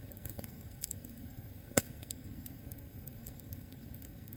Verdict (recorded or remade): remade